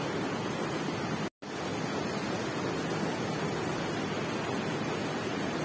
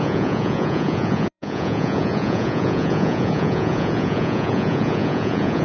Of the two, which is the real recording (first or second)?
first